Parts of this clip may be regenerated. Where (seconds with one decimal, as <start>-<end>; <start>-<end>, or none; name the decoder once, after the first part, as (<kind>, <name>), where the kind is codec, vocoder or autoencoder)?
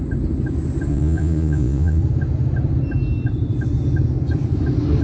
0.9-2.0 (vocoder, Vocos)